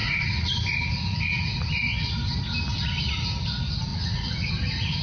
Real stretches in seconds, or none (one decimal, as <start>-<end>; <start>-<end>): 0.5-3.9; 4.5-5.0